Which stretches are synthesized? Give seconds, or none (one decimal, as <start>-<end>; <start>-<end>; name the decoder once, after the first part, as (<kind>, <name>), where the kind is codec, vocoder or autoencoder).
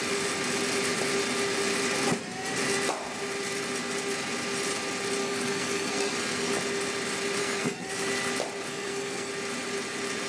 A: 5.2-6.5 (codec, SNAC); 7.4-7.9; 8.7-9.3